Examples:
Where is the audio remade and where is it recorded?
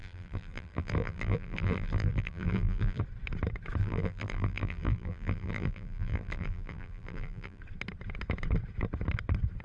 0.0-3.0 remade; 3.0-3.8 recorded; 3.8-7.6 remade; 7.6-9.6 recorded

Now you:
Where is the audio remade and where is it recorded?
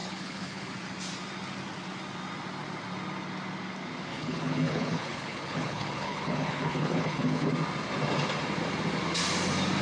0.0-0.7 remade; 0.7-4.1 recorded; 4.1-7.5 remade; 7.5-9.8 recorded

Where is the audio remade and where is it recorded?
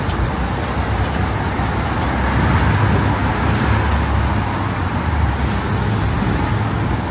0.0-7.1 recorded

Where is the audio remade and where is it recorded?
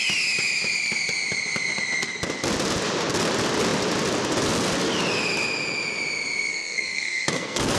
0.0-6.5 recorded; 6.5-7.8 remade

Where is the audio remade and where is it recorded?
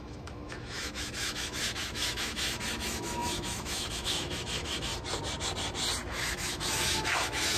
0.0-4.9 remade; 4.9-6.1 recorded; 6.1-7.6 remade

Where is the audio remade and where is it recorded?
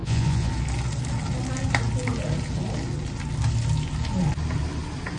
0.0-0.5 remade; 0.5-5.2 recorded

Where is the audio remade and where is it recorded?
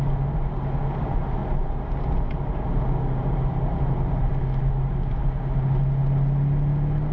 0.0-7.1 recorded